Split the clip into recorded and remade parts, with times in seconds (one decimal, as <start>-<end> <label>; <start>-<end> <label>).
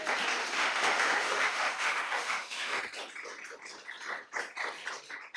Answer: 0.0-0.4 recorded; 0.4-2.8 remade; 2.8-5.4 recorded